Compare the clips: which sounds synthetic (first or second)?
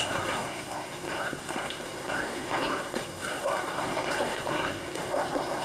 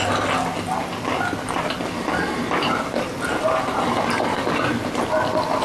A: first